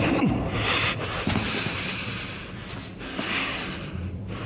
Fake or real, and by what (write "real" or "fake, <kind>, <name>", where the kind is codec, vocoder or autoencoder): real